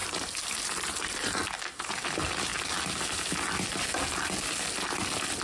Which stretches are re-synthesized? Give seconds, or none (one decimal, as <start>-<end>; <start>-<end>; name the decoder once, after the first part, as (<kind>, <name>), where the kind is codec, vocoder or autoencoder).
0.0-1.3 (vocoder, BigVGAN v2)